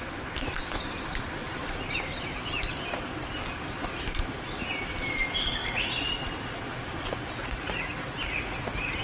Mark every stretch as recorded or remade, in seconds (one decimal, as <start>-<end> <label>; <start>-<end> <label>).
0.0-5.6 recorded; 5.6-6.1 remade; 6.1-7.4 recorded; 7.4-9.0 remade